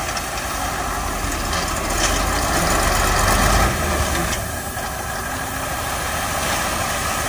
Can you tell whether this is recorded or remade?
recorded